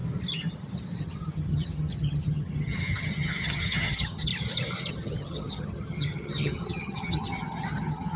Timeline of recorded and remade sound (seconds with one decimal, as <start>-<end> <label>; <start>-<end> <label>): 0.0-1.0 recorded; 1.0-4.3 remade; 4.3-4.9 recorded; 4.9-8.2 remade